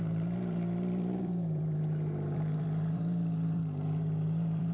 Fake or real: fake